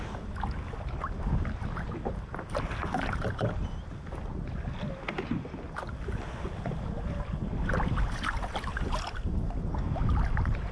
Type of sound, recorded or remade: recorded